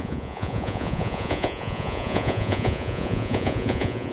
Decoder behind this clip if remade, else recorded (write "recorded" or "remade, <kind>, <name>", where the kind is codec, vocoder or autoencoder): remade, vocoder, Vocos